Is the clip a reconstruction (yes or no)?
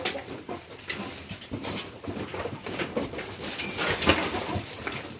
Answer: yes